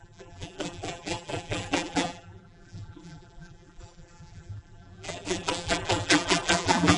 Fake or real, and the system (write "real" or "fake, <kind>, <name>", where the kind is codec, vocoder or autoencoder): fake, vocoder, BigVGAN v2